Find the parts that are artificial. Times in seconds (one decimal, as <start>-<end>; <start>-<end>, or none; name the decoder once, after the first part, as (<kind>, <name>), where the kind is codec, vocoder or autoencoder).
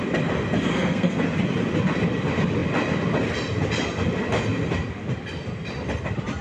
0.7-1.2 (codec, SNAC)